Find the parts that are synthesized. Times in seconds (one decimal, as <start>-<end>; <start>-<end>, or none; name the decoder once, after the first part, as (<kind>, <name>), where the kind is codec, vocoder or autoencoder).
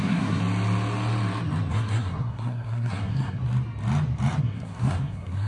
0.0-0.4 (codec, SNAC); 1.7-3.4; 4.4-5.5